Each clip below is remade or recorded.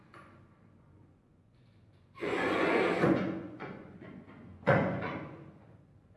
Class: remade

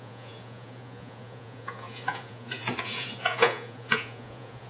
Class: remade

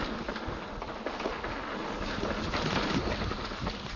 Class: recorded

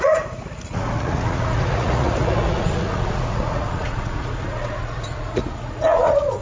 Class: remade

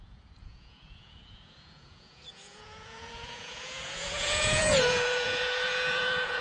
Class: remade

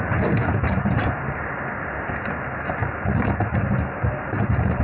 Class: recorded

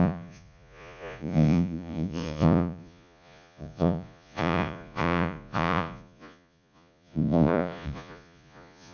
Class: remade